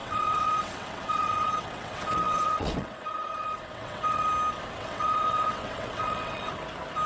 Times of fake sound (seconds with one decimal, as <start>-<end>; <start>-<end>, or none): 0.0-4.3; 4.8-6.5